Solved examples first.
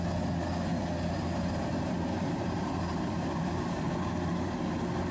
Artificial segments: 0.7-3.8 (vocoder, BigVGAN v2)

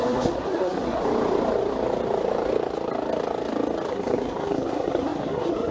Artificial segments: 0.0-1.0 (codec, SNAC); 3.9-5.7